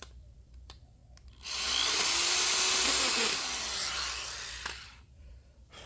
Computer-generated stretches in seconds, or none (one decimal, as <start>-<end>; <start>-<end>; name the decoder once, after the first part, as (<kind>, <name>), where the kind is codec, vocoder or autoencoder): 0.0-1.0 (vocoder, BigVGAN v2); 4.5-5.9